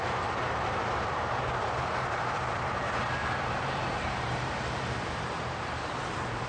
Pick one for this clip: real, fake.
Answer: fake